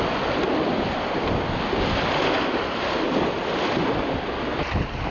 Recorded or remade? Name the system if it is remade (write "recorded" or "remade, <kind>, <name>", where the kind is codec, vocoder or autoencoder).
recorded